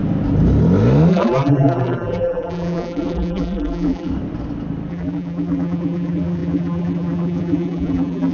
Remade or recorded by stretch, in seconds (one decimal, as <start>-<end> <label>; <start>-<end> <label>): 0.0-1.1 recorded; 1.1-4.1 remade; 4.1-4.9 recorded; 4.9-8.3 remade